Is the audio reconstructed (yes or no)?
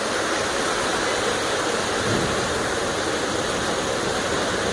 no